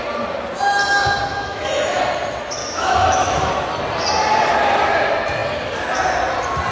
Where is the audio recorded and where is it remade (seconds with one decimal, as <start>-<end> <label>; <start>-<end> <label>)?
0.0-1.3 recorded; 1.3-2.0 remade; 2.0-2.6 recorded; 2.6-3.5 remade; 3.5-6.7 recorded